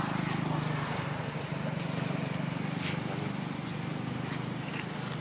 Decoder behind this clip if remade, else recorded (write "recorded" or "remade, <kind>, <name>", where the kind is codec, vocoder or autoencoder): recorded